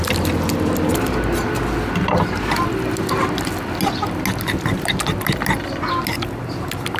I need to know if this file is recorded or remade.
recorded